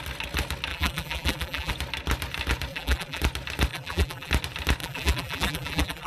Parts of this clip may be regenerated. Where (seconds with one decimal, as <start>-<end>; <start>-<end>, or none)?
0.7-1.7; 2.7-3.2; 3.7-4.3; 4.8-6.1